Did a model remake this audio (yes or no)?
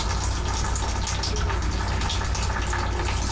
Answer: no